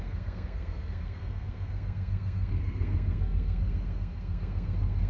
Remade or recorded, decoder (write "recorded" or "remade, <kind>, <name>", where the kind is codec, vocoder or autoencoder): remade, codec, SNAC